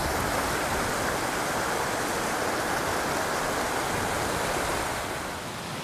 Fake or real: real